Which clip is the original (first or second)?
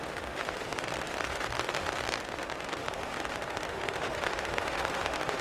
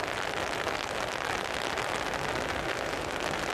second